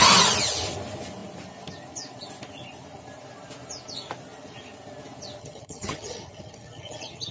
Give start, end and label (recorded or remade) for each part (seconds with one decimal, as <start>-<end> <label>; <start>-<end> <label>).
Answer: 0.0-5.4 recorded; 5.4-7.3 remade